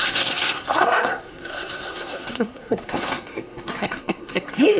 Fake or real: fake